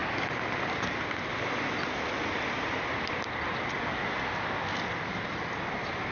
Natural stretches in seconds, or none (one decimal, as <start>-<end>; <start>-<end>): 0.0-6.1